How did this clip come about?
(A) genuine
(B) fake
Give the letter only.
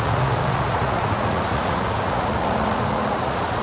B